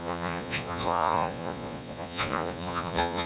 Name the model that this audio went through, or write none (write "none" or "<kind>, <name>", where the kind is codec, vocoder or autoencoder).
vocoder, Vocos